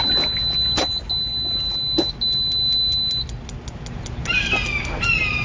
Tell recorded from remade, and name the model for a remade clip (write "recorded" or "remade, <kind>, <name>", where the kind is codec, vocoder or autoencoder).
recorded